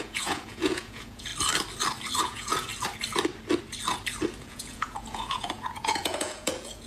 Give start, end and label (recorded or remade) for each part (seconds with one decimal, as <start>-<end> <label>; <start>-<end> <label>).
0.0-1.3 remade; 1.3-2.2 recorded; 2.2-2.7 remade; 2.7-4.4 recorded; 4.4-6.9 remade